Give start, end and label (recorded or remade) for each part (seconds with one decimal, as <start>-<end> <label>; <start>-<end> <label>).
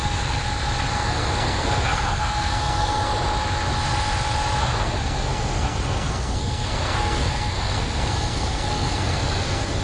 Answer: 0.0-0.4 remade; 0.4-0.9 recorded; 0.9-3.1 remade; 3.1-4.6 recorded; 4.6-9.8 remade